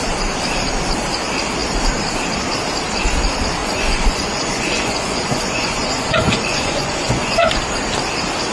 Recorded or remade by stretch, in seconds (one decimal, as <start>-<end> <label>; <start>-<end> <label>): 0.0-3.6 recorded; 3.6-7.5 remade; 7.5-8.5 recorded